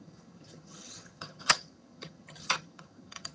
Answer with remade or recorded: remade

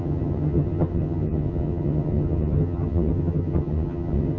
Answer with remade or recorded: remade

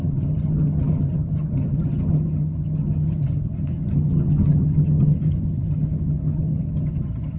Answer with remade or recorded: remade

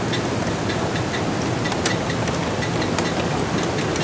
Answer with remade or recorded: recorded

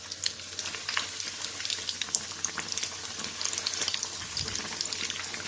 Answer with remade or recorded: recorded